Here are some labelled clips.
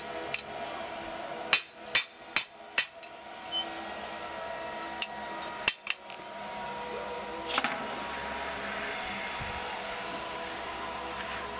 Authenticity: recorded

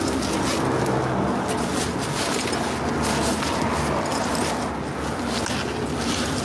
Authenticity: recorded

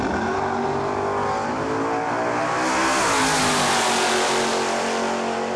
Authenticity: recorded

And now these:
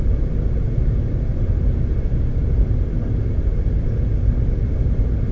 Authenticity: recorded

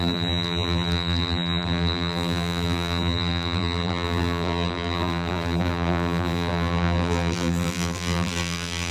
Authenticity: remade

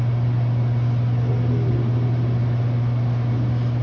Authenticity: recorded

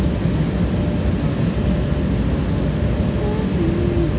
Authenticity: recorded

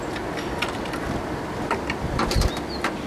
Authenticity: recorded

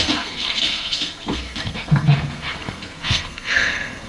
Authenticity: remade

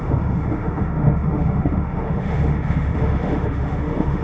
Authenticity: remade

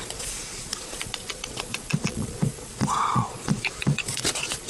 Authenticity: remade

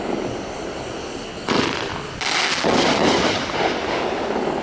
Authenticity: recorded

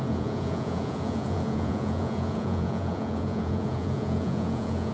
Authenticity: remade